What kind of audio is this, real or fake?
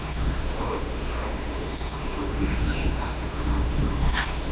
fake